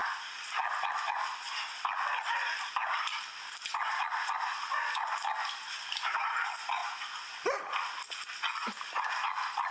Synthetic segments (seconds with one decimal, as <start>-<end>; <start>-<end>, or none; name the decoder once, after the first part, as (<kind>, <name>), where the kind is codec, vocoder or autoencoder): none